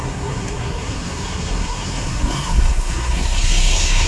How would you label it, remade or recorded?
remade